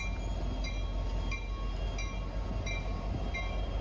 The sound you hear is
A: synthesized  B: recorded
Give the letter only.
B